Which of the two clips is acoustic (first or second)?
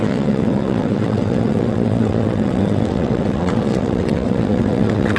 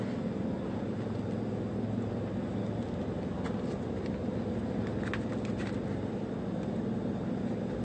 second